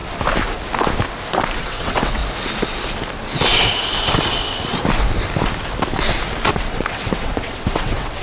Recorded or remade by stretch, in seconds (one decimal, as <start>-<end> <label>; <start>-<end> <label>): 0.0-1.6 recorded; 1.6-2.2 remade; 2.2-6.6 recorded; 6.6-8.2 remade